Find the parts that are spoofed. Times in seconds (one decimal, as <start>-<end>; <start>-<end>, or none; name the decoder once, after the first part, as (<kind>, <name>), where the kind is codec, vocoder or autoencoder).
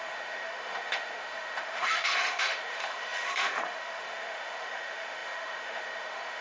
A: 0.0-6.4 (autoencoder, DAC-VAE)